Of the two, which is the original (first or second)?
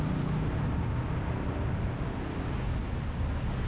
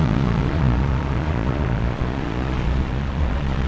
first